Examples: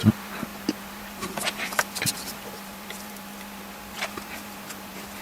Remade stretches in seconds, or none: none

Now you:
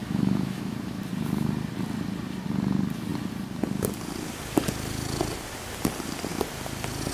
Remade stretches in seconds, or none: 0.0-1.0 (autoencoder, DAC-VAE)

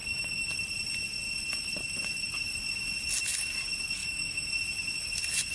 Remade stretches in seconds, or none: 0.0-0.5 (autoencoder, DAC-VAE); 4.0-4.5

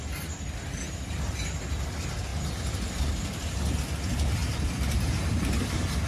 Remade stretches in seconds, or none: none

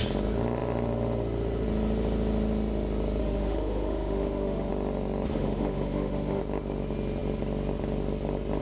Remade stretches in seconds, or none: 3.2-4.7 (autoencoder, DAC-VAE); 5.3-6.4

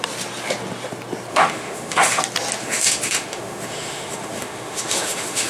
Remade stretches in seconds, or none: 1.3-2.2 (autoencoder, DAC-VAE); 2.6-5.5

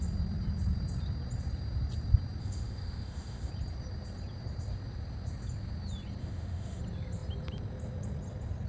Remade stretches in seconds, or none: 2.4-3.5 (autoencoder, DAC-VAE); 6.2-6.8

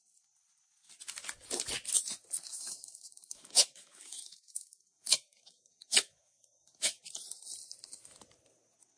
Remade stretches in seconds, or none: 2.5-7.0 (autoencoder, DAC-VAE)